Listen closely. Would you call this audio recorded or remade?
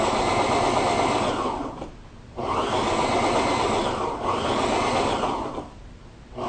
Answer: recorded